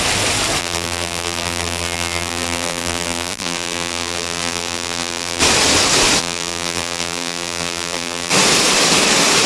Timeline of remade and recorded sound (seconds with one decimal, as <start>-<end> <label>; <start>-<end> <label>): 0.0-0.6 recorded; 0.6-5.4 remade; 5.4-6.2 recorded; 6.2-8.3 remade; 8.3-9.5 recorded